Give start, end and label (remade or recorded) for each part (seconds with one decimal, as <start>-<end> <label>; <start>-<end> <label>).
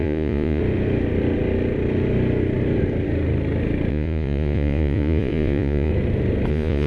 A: 0.0-0.6 remade; 0.6-3.9 recorded; 3.9-5.9 remade; 5.9-6.5 recorded; 6.5-6.9 remade